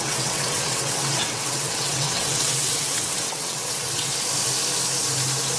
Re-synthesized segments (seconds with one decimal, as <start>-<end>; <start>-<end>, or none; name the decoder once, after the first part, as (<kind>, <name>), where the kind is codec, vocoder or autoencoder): 0.0-4.1 (vocoder, WaveNeXt)